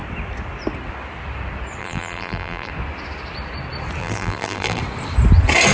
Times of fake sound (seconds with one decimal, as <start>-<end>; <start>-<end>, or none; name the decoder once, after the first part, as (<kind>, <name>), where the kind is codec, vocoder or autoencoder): 1.8-2.7 (vocoder, BigVGAN v2); 4.0-4.8